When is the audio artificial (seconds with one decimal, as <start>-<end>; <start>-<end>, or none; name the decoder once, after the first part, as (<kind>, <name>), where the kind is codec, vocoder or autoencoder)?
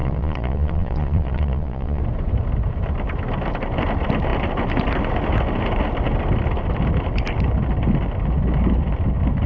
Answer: 0.0-2.0 (vocoder, Vocos)